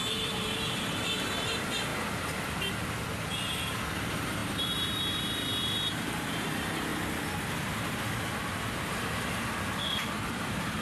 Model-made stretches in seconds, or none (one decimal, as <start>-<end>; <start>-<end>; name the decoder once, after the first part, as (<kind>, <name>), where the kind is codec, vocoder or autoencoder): 0.0-1.9 (vocoder, BigVGAN v2); 3.5-6.9; 8.9-10.8